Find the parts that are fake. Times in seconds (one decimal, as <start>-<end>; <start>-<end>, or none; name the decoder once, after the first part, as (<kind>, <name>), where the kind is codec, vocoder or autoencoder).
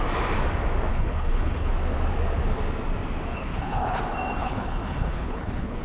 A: 0.9-1.7 (codec, HILCodec); 3.3-4.0; 4.4-5.8